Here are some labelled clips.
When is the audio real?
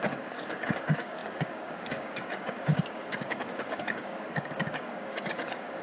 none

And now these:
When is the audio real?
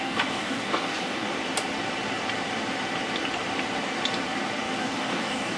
1.4-4.8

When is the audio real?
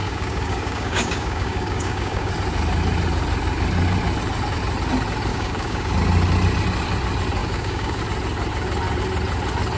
2.3-5.3; 5.9-7.4; 8.0-9.8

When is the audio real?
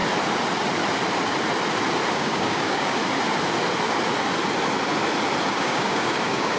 0.0-2.1; 3.0-5.5